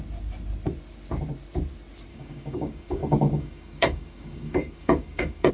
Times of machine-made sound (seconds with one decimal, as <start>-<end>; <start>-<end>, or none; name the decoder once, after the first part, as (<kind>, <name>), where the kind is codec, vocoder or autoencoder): 2.1-5.5 (codec, DAC)